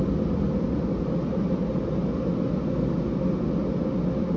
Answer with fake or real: real